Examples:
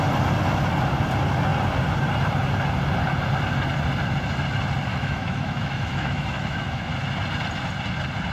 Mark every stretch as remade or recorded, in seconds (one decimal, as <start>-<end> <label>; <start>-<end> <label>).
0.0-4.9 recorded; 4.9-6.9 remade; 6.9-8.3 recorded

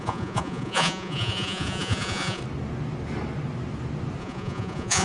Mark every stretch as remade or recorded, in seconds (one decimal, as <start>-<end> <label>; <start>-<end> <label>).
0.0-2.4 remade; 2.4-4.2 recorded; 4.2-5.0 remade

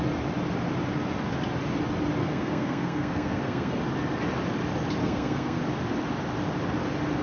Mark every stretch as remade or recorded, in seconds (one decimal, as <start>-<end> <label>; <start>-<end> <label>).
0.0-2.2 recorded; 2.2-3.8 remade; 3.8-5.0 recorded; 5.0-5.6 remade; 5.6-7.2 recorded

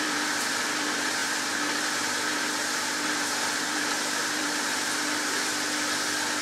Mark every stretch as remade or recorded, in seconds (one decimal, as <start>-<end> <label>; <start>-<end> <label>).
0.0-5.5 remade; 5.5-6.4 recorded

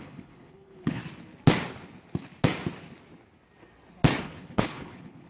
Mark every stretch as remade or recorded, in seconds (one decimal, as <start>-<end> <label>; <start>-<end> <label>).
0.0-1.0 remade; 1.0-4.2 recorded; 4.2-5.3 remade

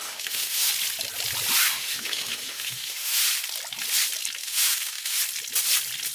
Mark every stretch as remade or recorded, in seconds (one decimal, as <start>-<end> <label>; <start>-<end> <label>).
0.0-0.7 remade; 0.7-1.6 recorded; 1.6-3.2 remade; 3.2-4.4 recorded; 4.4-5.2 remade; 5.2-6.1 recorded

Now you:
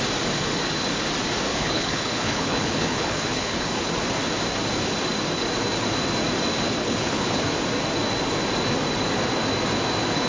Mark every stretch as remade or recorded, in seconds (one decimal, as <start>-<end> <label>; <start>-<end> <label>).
0.0-1.5 recorded; 1.5-3.7 remade; 3.7-6.8 recorded; 6.8-7.4 remade; 7.4-10.3 recorded